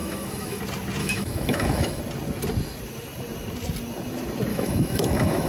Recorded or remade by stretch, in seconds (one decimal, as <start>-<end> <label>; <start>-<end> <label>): 0.0-0.6 remade; 0.6-1.0 recorded; 1.0-2.0 remade; 2.0-4.5 recorded; 4.5-5.5 remade